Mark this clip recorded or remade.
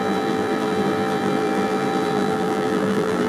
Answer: remade